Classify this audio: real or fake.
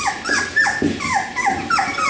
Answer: real